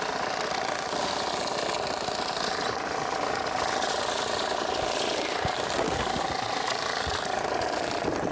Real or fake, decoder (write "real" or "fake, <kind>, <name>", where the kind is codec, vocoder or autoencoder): real